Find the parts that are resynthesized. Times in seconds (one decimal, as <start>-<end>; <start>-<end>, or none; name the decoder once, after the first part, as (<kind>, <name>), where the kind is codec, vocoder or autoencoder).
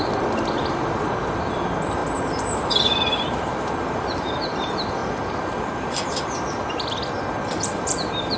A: 0.0-2.0 (vocoder, BigVGAN v2); 2.6-8.4